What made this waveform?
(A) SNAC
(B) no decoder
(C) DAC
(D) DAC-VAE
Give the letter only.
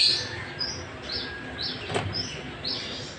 B